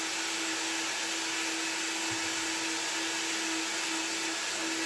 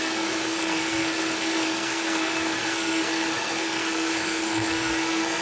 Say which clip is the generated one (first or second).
second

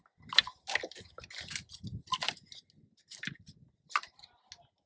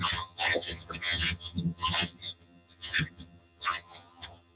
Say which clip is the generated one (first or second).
second